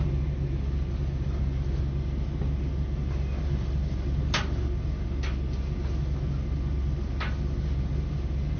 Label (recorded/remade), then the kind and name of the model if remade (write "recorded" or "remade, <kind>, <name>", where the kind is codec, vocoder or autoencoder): recorded